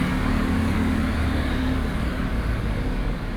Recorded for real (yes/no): no